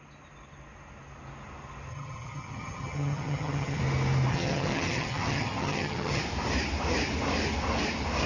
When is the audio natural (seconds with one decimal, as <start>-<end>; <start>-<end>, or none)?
0.0-1.9; 3.8-4.3; 6.2-8.3